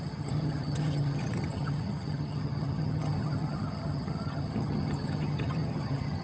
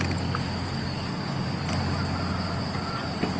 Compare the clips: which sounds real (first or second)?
second